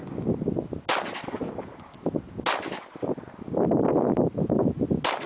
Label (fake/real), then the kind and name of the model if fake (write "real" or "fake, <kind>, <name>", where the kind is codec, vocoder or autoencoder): real